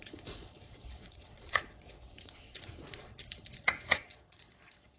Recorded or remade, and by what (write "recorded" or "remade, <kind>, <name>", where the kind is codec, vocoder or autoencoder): remade, vocoder, Vocos